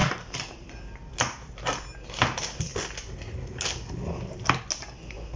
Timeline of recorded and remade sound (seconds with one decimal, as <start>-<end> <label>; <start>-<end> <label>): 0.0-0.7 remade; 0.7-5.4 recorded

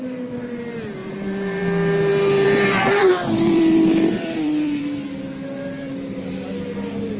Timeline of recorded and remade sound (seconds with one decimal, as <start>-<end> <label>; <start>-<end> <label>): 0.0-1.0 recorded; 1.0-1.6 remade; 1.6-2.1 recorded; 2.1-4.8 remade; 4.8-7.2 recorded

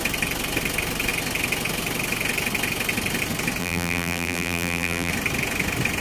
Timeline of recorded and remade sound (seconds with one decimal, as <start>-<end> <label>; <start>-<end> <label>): 0.0-3.6 recorded; 3.6-5.1 remade; 5.1-6.0 recorded

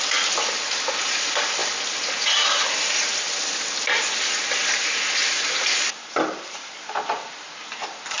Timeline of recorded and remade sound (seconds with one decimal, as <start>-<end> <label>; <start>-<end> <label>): 0.0-5.2 recorded; 5.2-6.9 remade; 6.9-8.2 recorded